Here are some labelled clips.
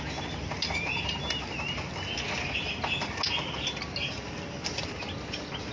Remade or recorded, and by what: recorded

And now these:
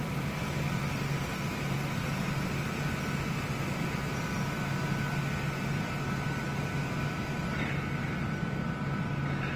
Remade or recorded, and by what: recorded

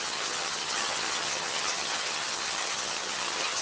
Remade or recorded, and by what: remade, vocoder, HiFi-GAN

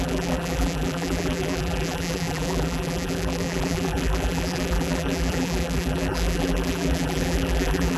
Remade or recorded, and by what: remade, vocoder, BigVGAN v2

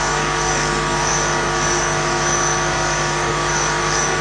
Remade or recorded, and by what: remade, codec, DAC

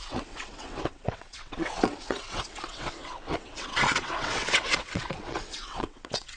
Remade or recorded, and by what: remade, vocoder, WaveNeXt